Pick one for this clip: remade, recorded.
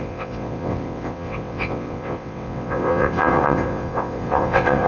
remade